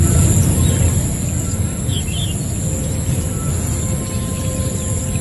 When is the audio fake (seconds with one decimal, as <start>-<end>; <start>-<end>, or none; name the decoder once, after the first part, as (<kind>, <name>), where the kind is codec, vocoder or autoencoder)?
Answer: none